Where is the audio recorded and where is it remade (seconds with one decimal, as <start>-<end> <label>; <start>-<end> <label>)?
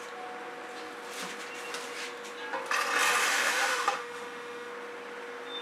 0.0-3.2 recorded; 3.2-4.7 remade; 4.7-5.6 recorded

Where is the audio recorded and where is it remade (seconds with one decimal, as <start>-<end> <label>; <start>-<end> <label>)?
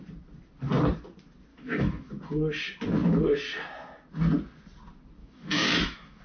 0.0-1.5 recorded; 1.5-2.1 remade; 2.1-5.2 recorded; 5.2-6.2 remade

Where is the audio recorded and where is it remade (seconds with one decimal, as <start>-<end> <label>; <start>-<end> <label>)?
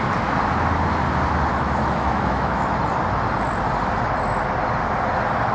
0.0-1.5 recorded; 1.5-2.7 remade; 2.7-5.5 recorded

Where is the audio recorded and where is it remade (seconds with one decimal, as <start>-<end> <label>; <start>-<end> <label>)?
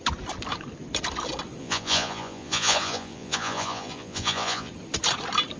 0.0-1.6 recorded; 1.6-4.7 remade; 4.7-5.6 recorded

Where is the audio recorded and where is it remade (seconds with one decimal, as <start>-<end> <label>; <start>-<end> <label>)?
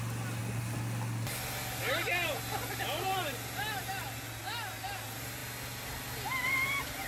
0.0-7.1 recorded